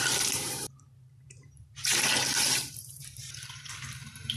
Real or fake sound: fake